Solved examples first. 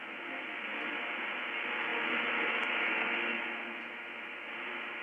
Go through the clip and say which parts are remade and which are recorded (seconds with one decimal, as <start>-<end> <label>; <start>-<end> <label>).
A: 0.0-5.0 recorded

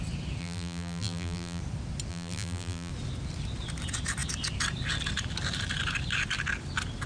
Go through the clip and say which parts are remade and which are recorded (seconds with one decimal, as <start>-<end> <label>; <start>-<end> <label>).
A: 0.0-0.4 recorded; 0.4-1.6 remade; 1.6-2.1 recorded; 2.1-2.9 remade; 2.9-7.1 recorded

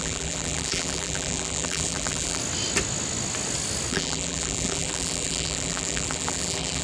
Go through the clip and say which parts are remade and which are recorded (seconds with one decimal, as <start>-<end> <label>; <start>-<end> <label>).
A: 0.0-2.4 remade; 2.4-3.9 recorded; 3.9-6.8 remade

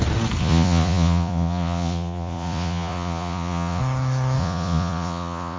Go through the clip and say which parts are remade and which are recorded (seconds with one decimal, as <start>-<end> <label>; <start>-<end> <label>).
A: 0.0-0.4 recorded; 0.4-3.8 remade; 3.8-4.4 recorded; 4.4-5.6 remade